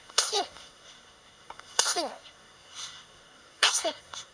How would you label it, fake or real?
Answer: fake